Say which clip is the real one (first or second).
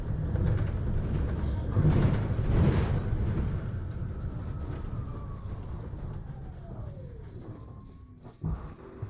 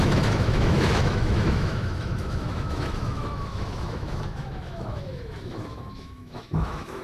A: first